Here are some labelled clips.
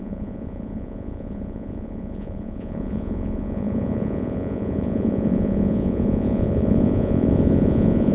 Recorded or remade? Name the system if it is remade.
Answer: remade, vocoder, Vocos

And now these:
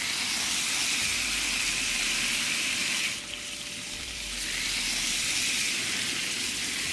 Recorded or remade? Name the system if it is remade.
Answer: recorded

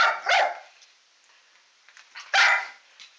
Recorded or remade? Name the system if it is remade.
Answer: recorded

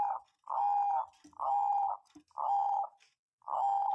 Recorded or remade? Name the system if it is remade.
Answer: recorded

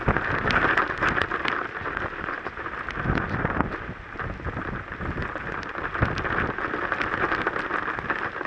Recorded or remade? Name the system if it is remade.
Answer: recorded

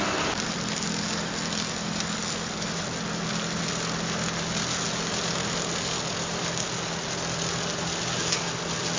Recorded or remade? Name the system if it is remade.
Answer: recorded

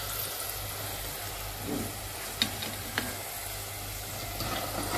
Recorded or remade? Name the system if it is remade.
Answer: recorded